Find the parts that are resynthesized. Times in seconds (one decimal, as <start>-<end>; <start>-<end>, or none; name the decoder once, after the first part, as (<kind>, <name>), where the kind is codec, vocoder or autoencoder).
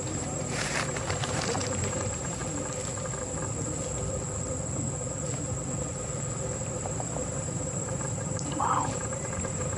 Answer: 0.0-2.4 (vocoder, BigVGAN v2); 6.7-9.8